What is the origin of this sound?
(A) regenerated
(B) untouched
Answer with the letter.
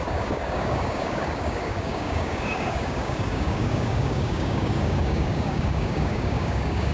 A